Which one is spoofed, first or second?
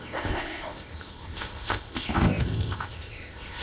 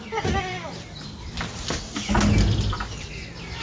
first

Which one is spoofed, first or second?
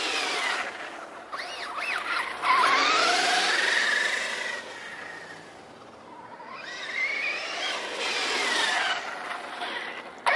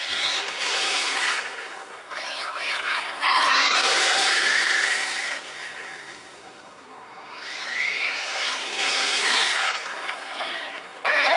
second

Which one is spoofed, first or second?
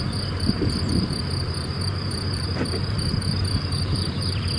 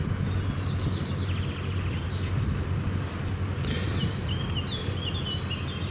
first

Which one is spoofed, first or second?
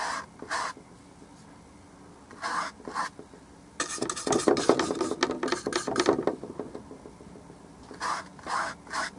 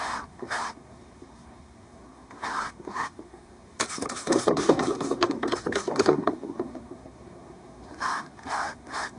second